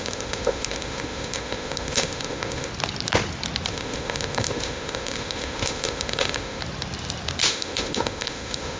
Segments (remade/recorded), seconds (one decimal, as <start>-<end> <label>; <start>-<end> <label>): 0.0-2.7 remade; 2.7-3.7 recorded; 3.7-6.6 remade; 6.6-7.5 recorded; 7.5-8.8 remade